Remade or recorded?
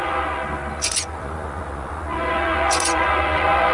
remade